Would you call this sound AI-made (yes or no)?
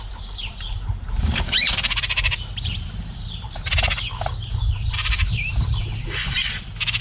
yes